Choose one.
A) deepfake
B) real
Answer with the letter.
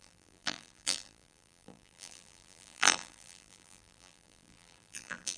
A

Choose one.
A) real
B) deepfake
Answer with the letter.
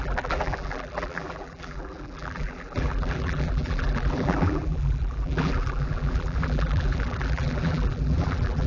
B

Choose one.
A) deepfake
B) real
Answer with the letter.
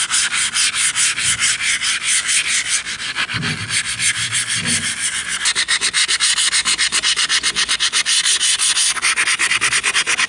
B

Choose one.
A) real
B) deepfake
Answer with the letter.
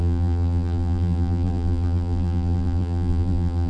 B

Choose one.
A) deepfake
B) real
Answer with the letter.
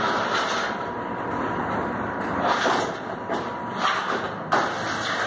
B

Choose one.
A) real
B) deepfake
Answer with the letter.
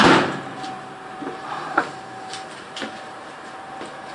B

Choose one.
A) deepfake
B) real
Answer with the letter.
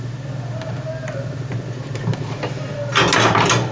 B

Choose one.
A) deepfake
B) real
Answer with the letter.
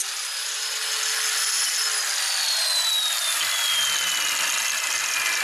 B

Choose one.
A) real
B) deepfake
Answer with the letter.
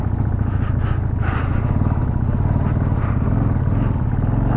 A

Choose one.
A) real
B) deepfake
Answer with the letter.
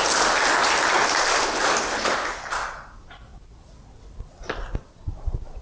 A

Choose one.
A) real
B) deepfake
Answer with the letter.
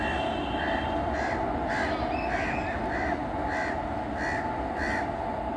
A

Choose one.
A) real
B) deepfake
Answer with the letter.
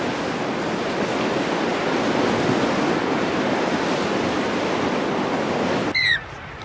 A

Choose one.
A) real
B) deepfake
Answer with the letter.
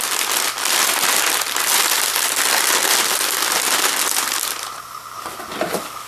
A